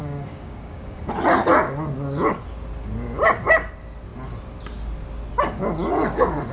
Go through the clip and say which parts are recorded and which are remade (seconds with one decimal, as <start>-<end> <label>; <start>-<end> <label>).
0.0-1.1 remade; 1.1-6.5 recorded